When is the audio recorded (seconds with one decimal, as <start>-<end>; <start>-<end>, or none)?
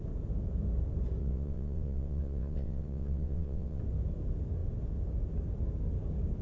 0.0-1.2; 3.8-6.4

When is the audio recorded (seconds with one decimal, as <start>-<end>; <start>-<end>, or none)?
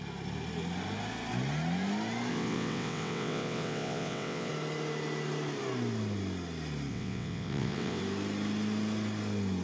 0.0-2.3; 4.5-6.9; 8.0-9.6